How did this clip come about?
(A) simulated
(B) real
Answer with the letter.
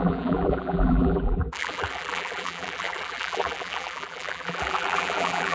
A